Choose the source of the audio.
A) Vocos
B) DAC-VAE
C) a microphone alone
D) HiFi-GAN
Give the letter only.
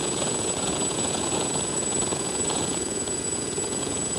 A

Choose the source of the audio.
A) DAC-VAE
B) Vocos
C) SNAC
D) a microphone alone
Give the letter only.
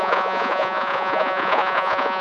B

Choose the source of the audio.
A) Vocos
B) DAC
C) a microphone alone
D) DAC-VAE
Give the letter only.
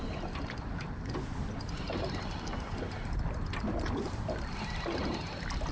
C